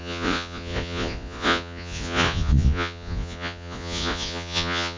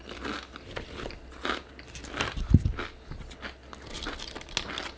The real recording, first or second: second